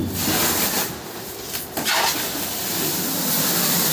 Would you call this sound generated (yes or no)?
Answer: no